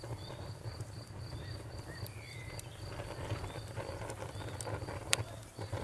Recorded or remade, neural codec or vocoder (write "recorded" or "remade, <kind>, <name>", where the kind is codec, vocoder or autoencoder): recorded